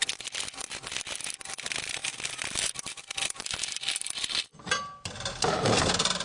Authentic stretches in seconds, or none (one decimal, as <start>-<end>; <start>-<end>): 0.0-6.2